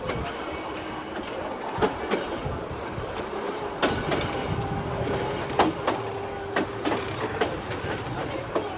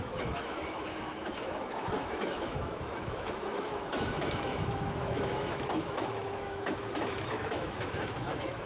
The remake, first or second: second